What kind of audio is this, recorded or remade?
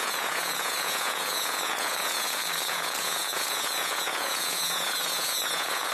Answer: remade